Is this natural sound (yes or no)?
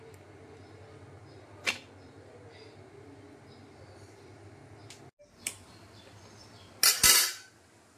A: yes